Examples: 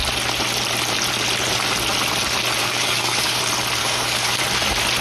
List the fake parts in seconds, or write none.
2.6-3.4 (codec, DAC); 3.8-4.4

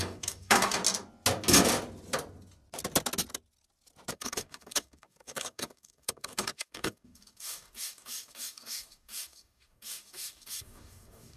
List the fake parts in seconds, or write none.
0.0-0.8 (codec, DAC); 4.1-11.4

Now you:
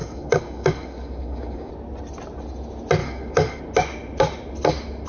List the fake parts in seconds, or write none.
0.0-1.7 (codec, DAC); 3.0-3.6

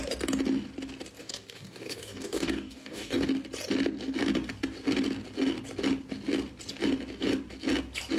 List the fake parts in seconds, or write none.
1.2-3.2 (codec, DAC)

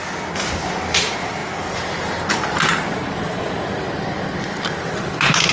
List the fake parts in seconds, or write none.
none